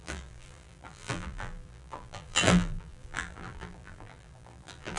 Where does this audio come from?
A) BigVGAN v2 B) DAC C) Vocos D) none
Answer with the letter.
A